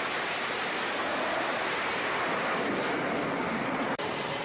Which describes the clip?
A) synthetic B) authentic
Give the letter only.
B